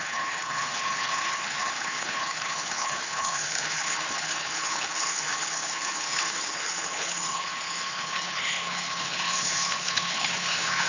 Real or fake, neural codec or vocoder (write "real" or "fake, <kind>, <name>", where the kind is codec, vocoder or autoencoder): fake, codec, HILCodec